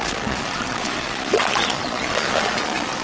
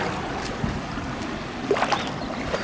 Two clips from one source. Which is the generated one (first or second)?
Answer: first